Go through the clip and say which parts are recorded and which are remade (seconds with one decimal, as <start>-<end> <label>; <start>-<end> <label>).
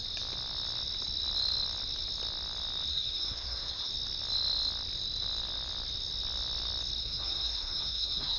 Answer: 0.0-2.9 recorded; 2.9-3.9 remade; 3.9-7.0 recorded; 7.0-8.4 remade